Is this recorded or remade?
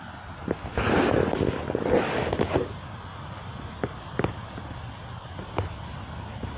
recorded